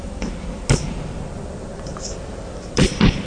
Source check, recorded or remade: recorded